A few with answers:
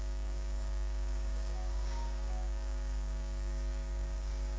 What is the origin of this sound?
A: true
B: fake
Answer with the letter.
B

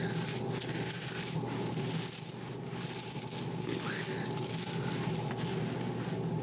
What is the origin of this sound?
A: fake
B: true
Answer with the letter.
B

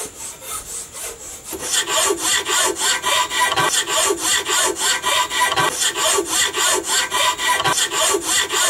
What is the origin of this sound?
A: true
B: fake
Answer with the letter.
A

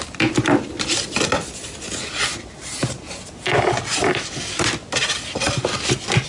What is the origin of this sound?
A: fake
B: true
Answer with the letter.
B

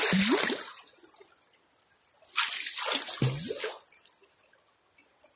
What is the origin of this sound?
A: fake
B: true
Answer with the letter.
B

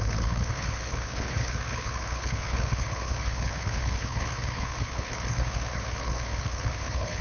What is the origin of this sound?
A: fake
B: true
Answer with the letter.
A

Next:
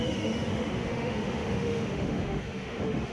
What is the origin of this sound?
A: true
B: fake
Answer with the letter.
B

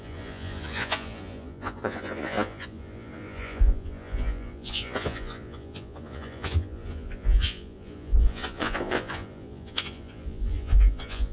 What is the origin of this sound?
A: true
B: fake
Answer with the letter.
B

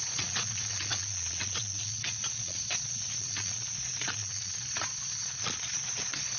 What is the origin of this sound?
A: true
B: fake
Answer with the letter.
B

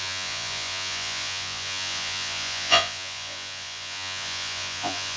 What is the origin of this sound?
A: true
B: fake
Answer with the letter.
B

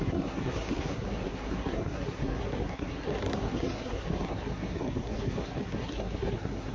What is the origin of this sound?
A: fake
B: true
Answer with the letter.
A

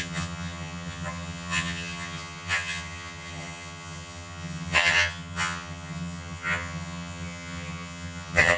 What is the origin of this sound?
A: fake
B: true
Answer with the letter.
A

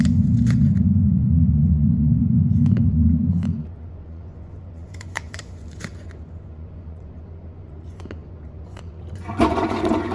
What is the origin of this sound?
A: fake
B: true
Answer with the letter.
A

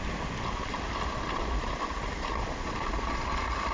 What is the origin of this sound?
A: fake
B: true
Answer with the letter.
B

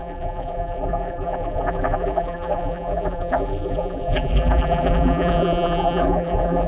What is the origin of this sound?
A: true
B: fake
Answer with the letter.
B